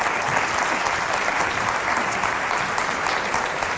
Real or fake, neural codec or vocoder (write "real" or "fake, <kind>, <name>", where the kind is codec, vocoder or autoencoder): real